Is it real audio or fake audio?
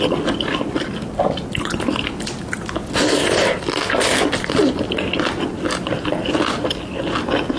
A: real